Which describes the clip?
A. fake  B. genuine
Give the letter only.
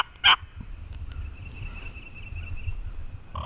B